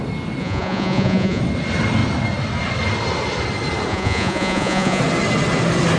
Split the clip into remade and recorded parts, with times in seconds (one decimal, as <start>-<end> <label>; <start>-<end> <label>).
0.0-0.4 recorded; 0.4-1.4 remade; 1.4-3.9 recorded; 3.9-5.0 remade; 5.0-6.0 recorded